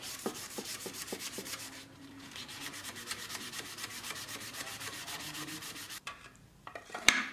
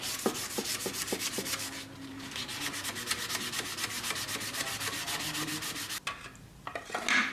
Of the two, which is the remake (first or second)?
first